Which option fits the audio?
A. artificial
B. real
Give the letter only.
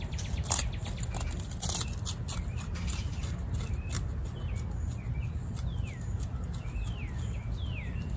B